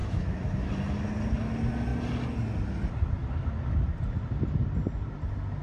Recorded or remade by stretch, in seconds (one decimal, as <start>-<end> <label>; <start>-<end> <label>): 0.0-0.7 remade; 0.7-5.6 recorded